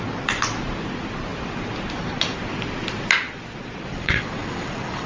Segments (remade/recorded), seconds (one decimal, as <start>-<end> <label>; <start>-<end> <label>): 0.0-3.9 recorded; 3.9-5.1 remade